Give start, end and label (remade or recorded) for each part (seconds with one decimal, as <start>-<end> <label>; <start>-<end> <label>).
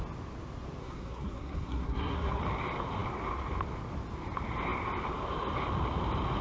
0.0-0.8 recorded; 0.8-2.4 remade; 2.4-6.4 recorded